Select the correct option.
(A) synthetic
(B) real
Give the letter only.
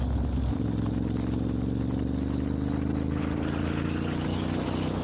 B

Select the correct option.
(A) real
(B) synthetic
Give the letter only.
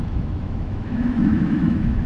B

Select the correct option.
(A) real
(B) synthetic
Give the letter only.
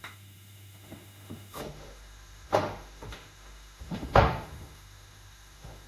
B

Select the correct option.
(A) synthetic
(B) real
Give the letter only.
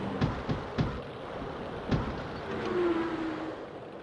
B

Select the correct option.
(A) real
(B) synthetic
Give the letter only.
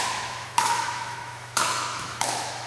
B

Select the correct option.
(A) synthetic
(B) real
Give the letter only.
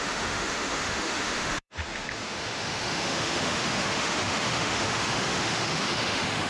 A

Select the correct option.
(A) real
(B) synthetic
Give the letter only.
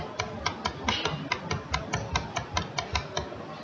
A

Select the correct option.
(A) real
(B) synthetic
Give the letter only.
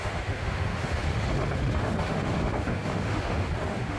B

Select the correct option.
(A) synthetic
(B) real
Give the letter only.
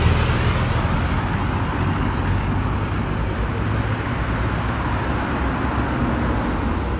B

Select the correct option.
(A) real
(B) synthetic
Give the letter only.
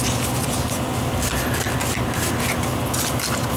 A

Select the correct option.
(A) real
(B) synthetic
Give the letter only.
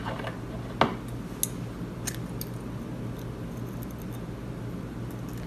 A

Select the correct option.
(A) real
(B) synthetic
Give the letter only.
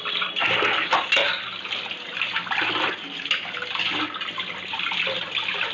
A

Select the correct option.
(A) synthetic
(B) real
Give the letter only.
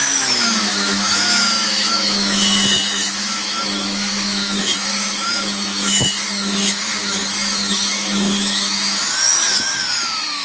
A